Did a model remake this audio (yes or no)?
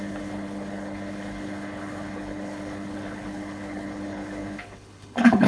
yes